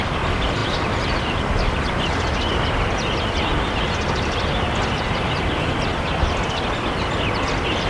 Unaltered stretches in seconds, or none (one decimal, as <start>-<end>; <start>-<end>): 0.0-7.9